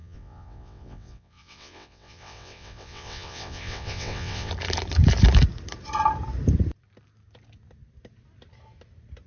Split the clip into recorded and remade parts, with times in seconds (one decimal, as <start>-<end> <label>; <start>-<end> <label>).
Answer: 0.0-4.5 remade; 4.5-9.3 recorded